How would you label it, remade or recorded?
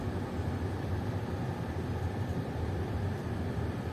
remade